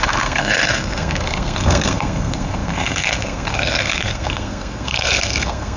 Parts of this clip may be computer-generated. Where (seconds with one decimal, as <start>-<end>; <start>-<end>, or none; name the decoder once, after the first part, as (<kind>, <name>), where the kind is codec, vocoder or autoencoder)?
0.0-5.8 (codec, SNAC)